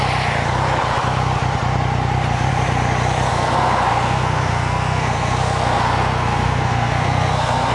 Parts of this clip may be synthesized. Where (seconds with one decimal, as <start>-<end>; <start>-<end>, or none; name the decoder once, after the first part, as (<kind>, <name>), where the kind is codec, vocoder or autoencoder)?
3.3-7.7 (codec, SNAC)